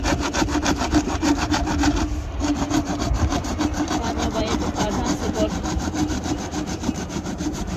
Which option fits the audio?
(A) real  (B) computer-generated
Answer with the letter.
B